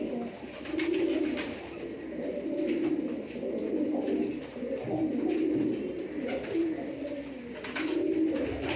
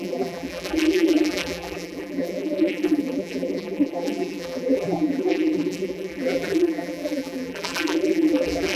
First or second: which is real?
first